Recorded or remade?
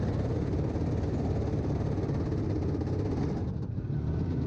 remade